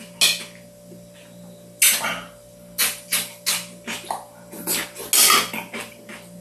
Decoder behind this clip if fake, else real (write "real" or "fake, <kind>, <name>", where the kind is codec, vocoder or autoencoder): real